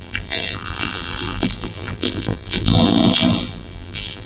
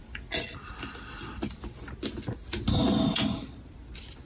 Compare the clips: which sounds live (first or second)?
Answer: second